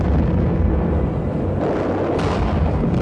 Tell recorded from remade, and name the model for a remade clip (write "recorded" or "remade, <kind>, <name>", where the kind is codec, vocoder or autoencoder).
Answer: recorded